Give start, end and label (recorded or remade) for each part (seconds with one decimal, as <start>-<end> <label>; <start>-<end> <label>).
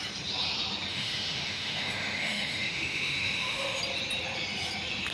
0.0-0.9 recorded; 0.9-3.8 remade; 3.8-5.1 recorded